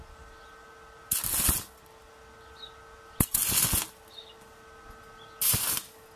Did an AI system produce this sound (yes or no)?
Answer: no